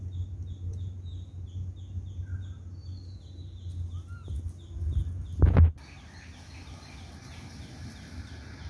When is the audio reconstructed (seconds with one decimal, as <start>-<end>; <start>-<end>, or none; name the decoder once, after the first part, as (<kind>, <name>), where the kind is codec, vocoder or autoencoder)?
none